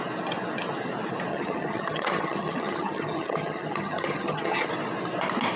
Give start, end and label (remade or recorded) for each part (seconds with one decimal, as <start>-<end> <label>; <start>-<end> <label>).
0.0-1.3 recorded; 1.3-4.7 remade; 4.7-5.6 recorded